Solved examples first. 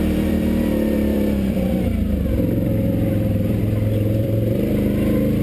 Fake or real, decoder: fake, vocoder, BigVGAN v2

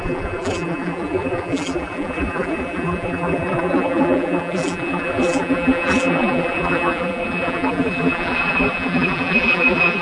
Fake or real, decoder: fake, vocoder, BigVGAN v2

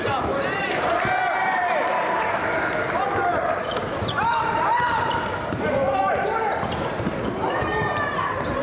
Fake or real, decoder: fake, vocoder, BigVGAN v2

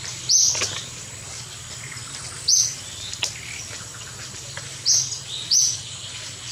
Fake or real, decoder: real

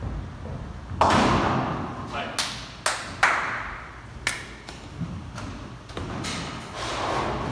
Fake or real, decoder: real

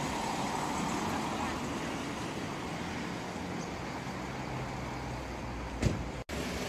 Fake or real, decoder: real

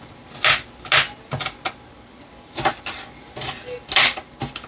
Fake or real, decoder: real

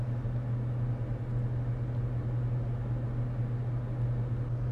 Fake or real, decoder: real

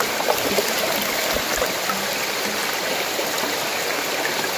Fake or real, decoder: real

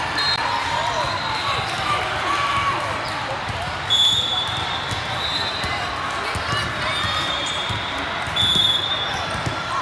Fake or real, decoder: fake, vocoder, BigVGAN v2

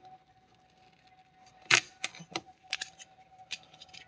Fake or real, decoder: fake, vocoder, BigVGAN v2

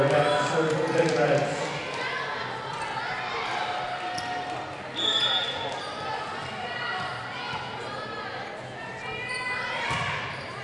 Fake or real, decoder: real